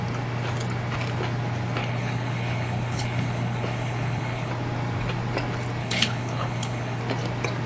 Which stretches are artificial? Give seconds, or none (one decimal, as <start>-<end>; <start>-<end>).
1.8-4.5; 5.8-7.0